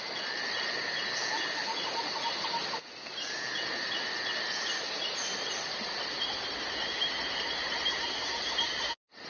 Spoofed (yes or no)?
no